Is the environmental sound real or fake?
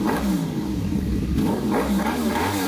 fake